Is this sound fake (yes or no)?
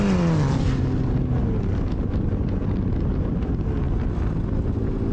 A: no